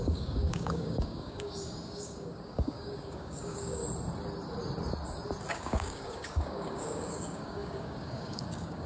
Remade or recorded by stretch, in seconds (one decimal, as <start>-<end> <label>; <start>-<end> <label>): 0.0-3.8 remade; 3.8-5.5 recorded; 5.5-8.9 remade